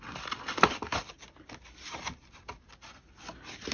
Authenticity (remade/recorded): recorded